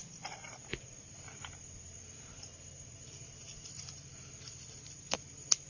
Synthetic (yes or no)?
no